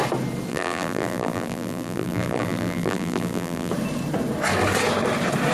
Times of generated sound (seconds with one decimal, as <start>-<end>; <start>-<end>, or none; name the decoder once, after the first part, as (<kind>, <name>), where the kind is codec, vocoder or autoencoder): 0.5-3.7 (vocoder, BigVGAN v2)